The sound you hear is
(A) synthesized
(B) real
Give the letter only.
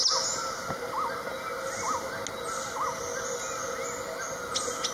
B